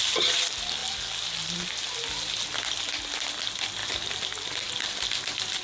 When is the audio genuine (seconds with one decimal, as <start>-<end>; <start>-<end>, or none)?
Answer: 0.0-5.6